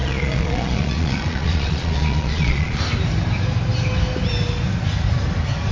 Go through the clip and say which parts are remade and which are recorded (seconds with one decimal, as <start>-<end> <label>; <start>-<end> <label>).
0.0-2.8 remade; 2.8-5.7 recorded